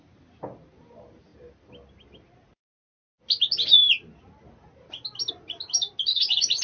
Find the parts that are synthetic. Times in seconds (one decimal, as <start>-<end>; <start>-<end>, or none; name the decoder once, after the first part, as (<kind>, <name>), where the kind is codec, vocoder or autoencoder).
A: 6.1-6.6 (vocoder, Vocos)